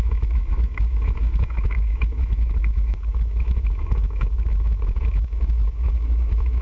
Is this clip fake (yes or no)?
yes